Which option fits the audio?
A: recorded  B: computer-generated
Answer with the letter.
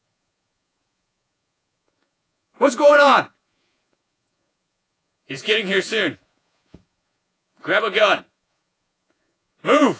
B